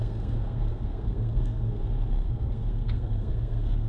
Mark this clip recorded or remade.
remade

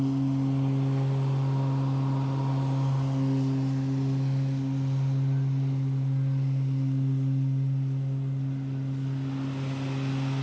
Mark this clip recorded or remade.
recorded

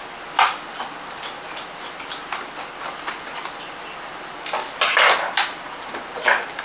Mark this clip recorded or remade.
recorded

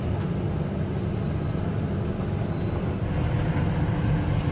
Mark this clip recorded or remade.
recorded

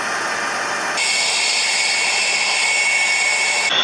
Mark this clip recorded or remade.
recorded